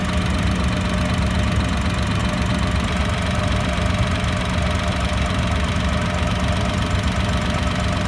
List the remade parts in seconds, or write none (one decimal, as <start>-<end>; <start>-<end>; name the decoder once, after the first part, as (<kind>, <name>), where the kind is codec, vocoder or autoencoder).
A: none